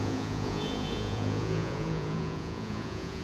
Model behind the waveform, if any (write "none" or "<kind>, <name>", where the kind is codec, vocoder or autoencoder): vocoder, Vocos